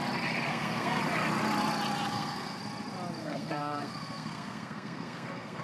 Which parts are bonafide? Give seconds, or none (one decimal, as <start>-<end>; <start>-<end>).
0.0-0.5; 1.0-2.1; 2.6-3.2

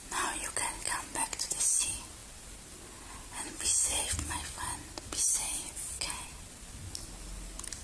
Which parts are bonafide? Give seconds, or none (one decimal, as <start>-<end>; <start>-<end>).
0.0-7.8